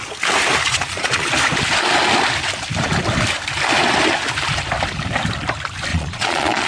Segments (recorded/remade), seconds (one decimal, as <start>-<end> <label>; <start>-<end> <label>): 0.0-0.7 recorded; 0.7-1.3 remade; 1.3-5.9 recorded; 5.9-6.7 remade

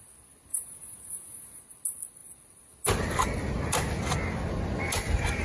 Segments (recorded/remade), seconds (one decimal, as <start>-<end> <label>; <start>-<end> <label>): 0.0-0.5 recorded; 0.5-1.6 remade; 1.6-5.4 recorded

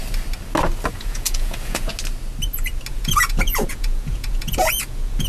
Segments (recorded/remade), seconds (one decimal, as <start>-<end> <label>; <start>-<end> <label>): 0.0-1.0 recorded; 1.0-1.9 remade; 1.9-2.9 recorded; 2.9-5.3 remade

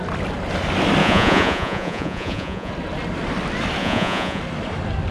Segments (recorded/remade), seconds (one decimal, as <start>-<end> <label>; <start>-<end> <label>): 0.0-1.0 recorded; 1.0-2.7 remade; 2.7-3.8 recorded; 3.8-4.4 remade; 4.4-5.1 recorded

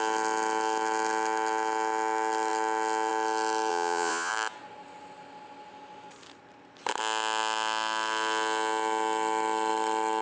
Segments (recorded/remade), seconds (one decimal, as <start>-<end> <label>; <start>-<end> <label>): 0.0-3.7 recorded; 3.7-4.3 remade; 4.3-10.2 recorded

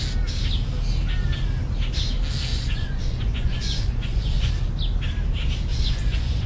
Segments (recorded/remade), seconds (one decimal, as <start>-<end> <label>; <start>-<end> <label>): 0.0-2.5 recorded; 2.5-4.5 remade; 4.5-5.7 recorded; 5.7-6.5 remade